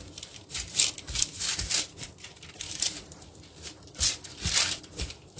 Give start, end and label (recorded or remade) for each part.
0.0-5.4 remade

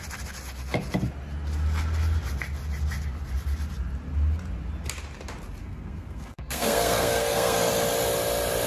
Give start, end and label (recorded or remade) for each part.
0.0-5.6 recorded; 5.6-7.7 remade; 7.7-8.7 recorded

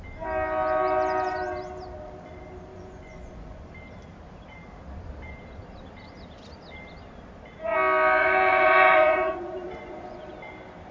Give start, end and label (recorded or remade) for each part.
0.0-2.7 recorded; 2.7-3.7 remade; 3.7-8.2 recorded; 8.2-10.3 remade; 10.3-10.9 recorded

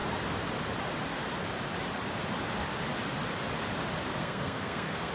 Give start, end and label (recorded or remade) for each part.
0.0-4.2 recorded; 4.2-5.1 remade

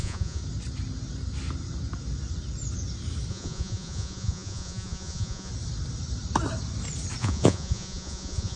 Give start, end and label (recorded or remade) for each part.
0.0-0.4 remade; 0.4-3.3 recorded; 3.3-5.5 remade; 5.5-7.2 recorded; 7.2-8.6 remade

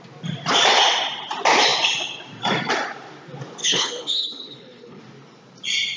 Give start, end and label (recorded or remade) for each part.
0.0-3.6 recorded; 3.6-5.0 remade; 5.0-6.0 recorded